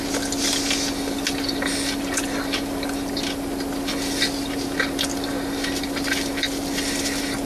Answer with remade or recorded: recorded